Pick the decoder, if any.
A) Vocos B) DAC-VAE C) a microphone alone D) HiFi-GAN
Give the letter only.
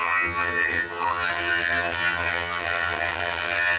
D